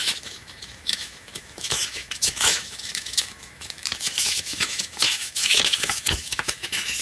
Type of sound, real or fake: fake